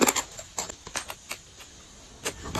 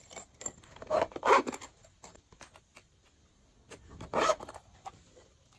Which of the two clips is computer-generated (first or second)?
second